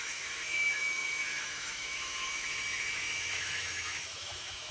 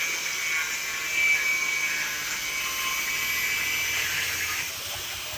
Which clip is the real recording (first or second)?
second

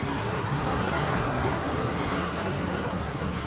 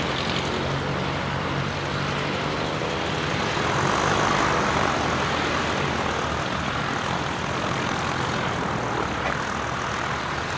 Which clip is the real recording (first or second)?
second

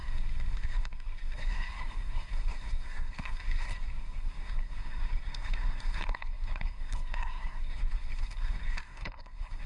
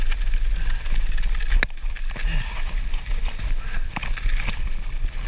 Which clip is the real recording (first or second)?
second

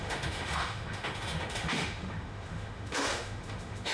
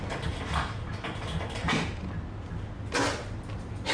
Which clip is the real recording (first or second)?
second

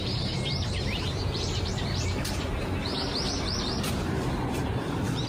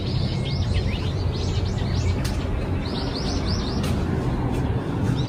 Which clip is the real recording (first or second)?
second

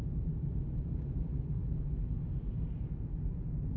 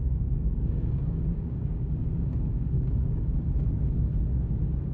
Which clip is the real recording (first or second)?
first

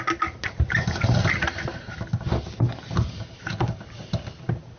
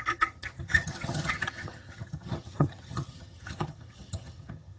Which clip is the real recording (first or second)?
first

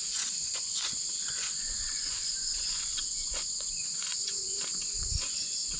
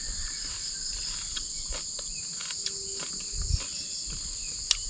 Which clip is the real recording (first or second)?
second